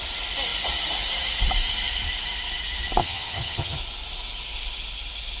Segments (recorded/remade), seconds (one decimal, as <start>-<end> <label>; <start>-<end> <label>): 0.0-3.0 recorded; 3.0-3.8 remade; 3.8-5.4 recorded